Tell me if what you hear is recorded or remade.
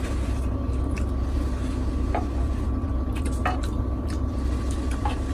recorded